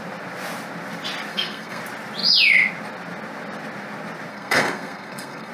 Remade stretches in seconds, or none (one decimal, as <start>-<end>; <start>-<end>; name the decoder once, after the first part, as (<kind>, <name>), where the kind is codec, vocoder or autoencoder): 1.3-1.8 (codec, SNAC); 4.3-5.5